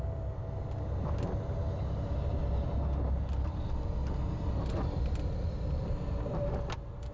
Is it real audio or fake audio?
real